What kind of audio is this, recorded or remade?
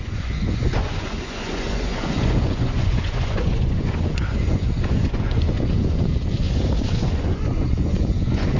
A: remade